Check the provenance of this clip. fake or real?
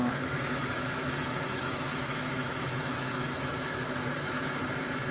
fake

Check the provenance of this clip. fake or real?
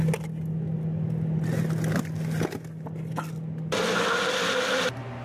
real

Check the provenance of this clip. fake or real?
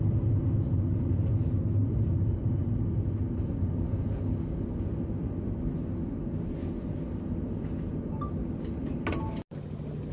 real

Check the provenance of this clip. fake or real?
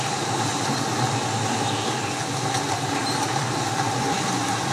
real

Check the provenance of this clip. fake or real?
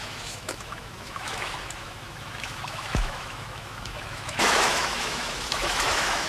fake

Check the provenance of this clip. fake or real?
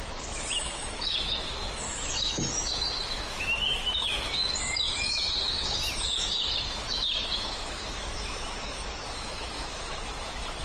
fake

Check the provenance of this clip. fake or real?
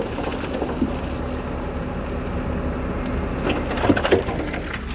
real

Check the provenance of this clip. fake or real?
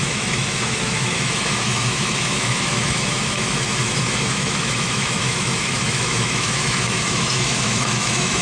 fake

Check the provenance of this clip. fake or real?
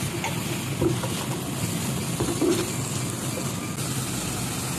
real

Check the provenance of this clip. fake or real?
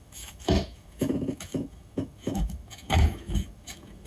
fake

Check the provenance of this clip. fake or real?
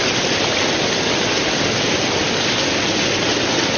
real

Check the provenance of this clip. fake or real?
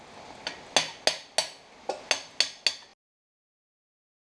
real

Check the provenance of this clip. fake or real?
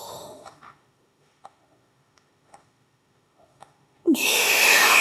fake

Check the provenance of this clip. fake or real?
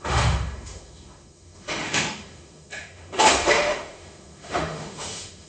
fake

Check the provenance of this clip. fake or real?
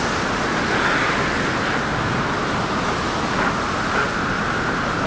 real